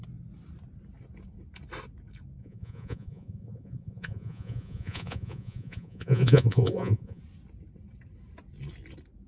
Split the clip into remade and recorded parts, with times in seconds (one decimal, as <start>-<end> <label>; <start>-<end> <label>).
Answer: 0.0-2.4 recorded; 2.4-7.2 remade; 7.2-9.3 recorded